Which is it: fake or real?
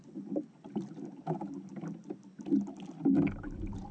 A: real